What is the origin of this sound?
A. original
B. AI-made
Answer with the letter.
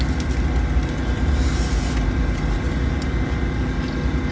A